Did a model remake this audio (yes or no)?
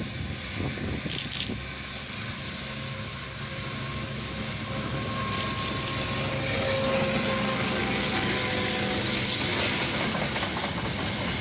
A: no